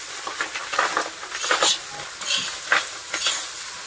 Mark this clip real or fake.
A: real